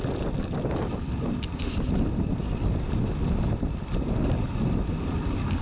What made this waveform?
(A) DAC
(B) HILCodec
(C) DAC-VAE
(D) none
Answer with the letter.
D